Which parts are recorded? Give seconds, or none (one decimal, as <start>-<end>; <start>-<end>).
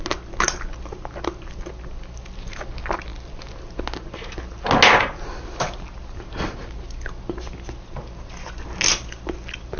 0.0-9.8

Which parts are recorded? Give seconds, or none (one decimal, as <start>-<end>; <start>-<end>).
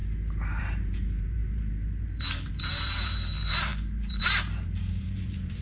0.0-0.6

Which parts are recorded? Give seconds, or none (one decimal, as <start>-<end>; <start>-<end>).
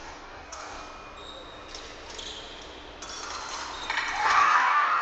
0.8-4.2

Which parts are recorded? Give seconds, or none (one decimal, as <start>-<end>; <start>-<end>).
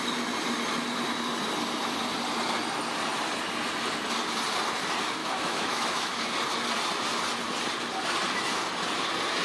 0.0-5.2; 6.2-9.4